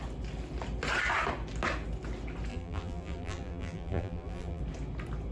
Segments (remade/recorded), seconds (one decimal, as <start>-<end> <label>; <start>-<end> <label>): 0.0-2.5 recorded; 2.5-4.6 remade; 4.6-5.3 recorded